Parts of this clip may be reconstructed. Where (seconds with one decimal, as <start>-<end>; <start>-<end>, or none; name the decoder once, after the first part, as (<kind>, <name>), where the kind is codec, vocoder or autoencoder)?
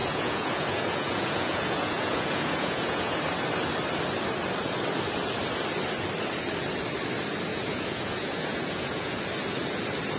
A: 0.0-3.2 (vocoder, Vocos); 7.5-9.2